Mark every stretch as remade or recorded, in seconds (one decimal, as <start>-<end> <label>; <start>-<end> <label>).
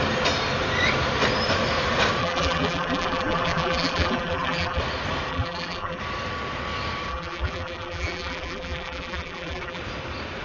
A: 0.0-2.2 recorded; 2.2-4.8 remade; 4.8-5.3 recorded; 5.3-6.0 remade; 6.0-7.1 recorded; 7.1-9.8 remade; 9.8-10.4 recorded